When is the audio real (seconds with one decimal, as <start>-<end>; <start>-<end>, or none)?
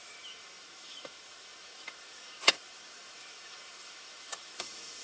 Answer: none